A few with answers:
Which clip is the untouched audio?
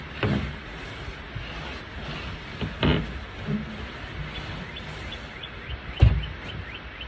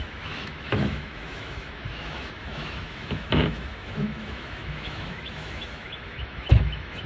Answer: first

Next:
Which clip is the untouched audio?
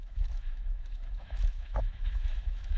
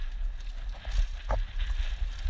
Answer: second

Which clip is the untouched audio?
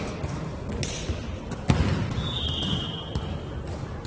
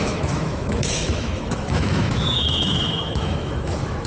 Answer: first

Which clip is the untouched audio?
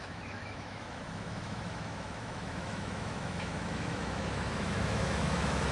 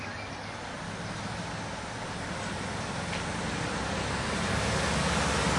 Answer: second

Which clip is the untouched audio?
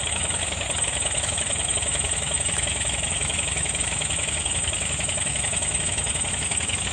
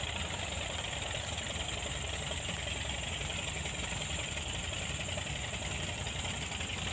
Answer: second